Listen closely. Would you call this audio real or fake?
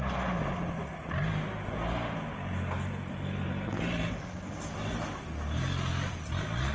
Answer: real